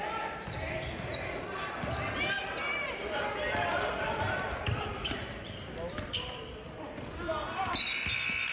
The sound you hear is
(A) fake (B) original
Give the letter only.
A